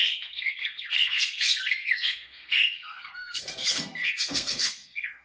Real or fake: fake